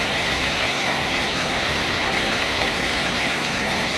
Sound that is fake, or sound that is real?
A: fake